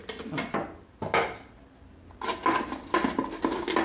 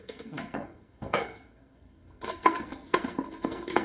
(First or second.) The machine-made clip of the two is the second